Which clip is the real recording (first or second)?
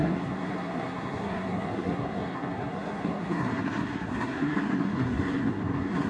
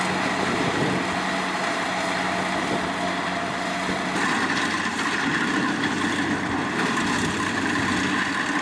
second